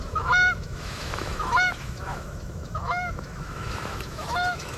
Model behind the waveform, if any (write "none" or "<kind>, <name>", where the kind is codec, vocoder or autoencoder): autoencoder, DAC-VAE